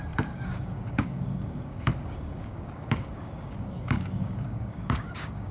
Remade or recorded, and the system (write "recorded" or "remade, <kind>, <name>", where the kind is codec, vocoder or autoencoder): remade, codec, DAC